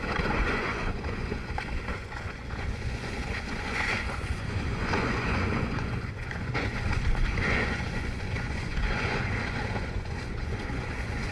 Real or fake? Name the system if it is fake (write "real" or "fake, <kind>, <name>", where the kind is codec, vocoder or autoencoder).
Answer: fake, vocoder, Vocos